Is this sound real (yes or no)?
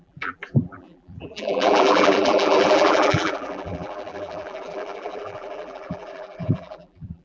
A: no